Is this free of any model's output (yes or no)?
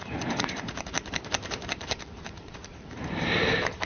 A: no